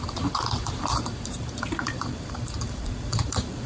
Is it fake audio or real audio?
fake